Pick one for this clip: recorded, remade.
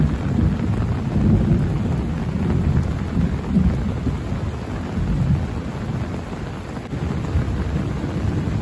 recorded